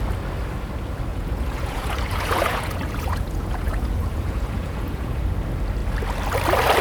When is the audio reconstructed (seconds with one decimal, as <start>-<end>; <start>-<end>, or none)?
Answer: 1.1-5.2